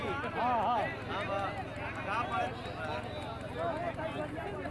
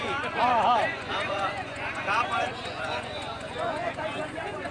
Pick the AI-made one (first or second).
second